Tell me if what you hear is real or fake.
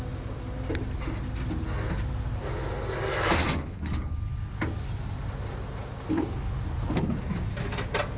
real